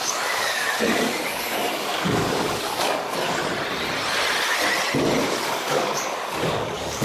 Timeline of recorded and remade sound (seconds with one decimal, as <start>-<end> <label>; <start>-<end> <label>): 0.0-3.4 remade; 3.4-5.2 recorded; 5.2-7.0 remade